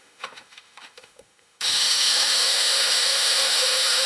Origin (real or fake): fake